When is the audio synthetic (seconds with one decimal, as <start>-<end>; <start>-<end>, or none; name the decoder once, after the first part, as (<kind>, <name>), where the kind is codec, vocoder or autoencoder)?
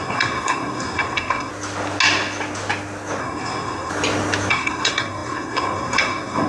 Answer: 0.0-1.5 (codec, SNAC); 3.2-3.9; 4.5-6.5